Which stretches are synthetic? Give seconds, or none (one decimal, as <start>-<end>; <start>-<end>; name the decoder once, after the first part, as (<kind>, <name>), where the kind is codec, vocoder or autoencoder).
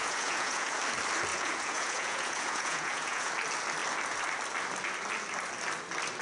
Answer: 0.0-0.8 (vocoder, Vocos); 1.3-3.3